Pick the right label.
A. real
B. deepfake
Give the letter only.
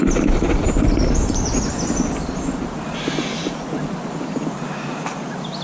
A